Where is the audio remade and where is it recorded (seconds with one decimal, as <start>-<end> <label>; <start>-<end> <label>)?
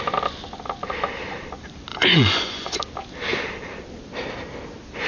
0.0-1.9 recorded; 1.9-2.8 remade; 2.8-5.1 recorded